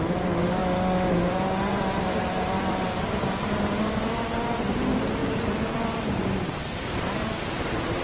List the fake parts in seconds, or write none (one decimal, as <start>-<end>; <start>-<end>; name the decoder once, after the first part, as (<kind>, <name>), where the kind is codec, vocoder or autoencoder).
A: 0.0-0.6 (vocoder, BigVGAN v2); 1.1-8.0